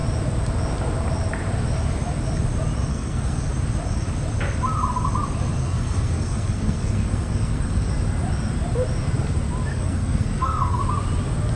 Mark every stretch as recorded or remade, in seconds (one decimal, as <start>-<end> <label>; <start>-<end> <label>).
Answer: 0.0-2.9 recorded; 2.9-3.5 remade; 3.5-5.6 recorded; 5.6-7.9 remade; 7.9-9.7 recorded; 9.7-10.8 remade; 10.8-11.6 recorded